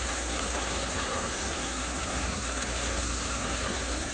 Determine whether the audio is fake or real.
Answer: fake